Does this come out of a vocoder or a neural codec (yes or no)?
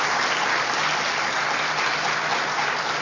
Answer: no